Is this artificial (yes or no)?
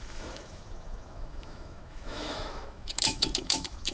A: yes